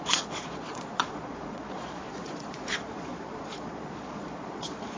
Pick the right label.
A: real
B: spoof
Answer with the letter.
B